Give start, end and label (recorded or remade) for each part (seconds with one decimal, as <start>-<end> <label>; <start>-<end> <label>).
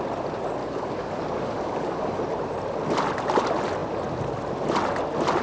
0.0-0.6 recorded; 0.6-2.2 remade; 2.2-5.4 recorded